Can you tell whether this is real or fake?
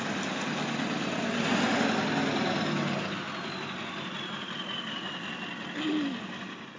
real